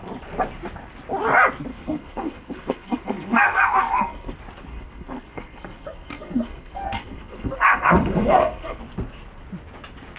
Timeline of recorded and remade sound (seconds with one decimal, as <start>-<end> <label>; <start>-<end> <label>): 0.0-1.7 recorded; 1.7-4.3 remade; 4.3-4.7 recorded; 4.7-8.8 remade; 8.8-10.2 recorded